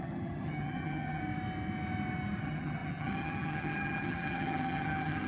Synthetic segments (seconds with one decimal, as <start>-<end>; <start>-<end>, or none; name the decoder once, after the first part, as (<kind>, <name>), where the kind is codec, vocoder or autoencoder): 0.0-1.2 (vocoder, HiFi-GAN); 2.4-5.3

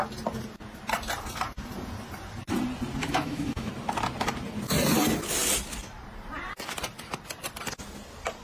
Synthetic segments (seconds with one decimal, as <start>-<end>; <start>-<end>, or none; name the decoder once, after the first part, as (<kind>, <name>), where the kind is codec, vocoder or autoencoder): 3.0-3.7 (autoencoder, DAC-VAE)

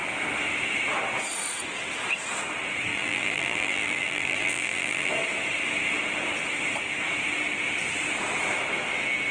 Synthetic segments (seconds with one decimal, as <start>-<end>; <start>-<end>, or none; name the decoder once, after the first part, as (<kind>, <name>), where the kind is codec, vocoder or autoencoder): 2.9-5.1 (vocoder, BigVGAN v2)

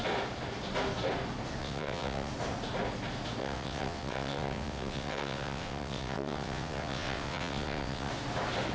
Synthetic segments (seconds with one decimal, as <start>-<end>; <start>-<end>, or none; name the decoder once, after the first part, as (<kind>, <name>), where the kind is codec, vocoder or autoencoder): 1.6-2.3 (vocoder, WaveNeXt); 3.4-8.1

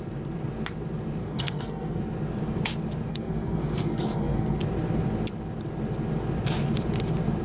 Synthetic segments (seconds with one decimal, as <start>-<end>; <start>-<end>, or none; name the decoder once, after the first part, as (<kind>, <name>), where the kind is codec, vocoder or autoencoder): 1.2-2.0 (codec, SNAC); 3.1-4.6

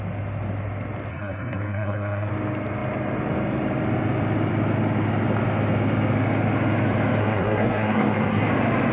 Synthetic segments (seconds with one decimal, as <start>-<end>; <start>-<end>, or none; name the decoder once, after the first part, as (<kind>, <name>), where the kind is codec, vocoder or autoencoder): 1.1-2.3 (codec, SNAC); 7.2-8.5

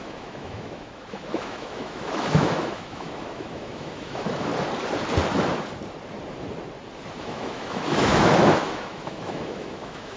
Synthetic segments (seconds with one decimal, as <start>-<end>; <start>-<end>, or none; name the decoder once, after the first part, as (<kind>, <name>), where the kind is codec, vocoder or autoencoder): 0.0-4.5 (autoencoder, DAC-VAE); 7.2-10.2

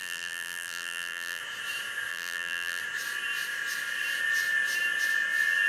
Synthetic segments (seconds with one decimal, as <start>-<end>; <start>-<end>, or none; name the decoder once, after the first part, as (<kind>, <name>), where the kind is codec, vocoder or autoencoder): 0.0-1.4 (vocoder, BigVGAN v2); 2.1-2.8